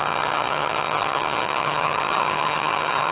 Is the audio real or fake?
fake